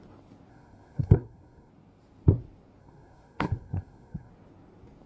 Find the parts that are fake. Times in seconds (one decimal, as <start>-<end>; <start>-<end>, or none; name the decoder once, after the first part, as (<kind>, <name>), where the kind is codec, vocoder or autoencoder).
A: 0.5-1.7 (codec, SNAC); 2.8-4.3